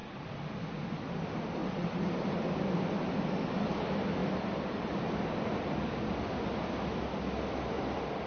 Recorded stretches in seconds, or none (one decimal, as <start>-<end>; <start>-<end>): 0.0-1.6; 2.8-4.2; 5.9-8.3